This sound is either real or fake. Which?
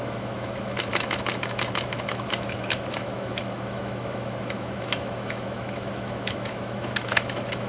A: fake